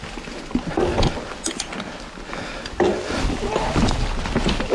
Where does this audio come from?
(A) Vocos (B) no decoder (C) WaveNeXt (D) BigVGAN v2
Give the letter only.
B